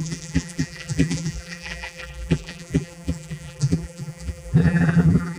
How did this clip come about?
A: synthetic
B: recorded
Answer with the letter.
A